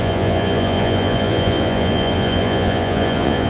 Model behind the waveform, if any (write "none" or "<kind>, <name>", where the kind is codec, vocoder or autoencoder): vocoder, Vocos